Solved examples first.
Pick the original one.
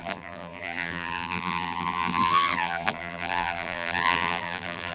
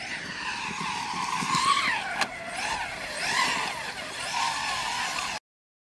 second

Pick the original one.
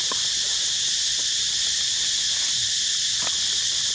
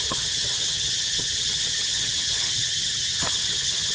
first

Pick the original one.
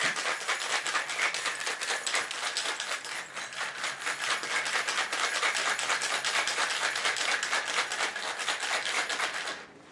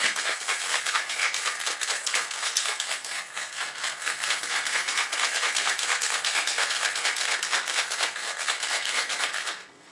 first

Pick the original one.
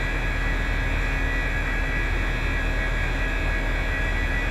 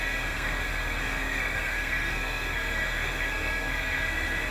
first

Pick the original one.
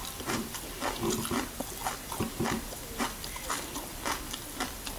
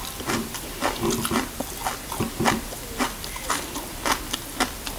second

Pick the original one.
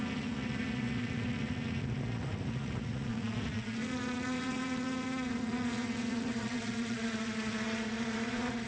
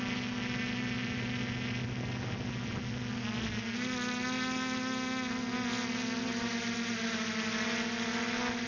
second